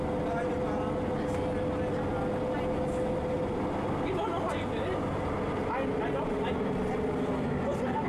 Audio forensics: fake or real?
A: real